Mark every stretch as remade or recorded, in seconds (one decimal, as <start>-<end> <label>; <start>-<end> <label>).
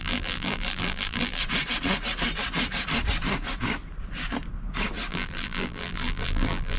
0.0-1.4 remade; 1.4-5.1 recorded; 5.1-6.8 remade